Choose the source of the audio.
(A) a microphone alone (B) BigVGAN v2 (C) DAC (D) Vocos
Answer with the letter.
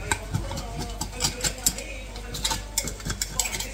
A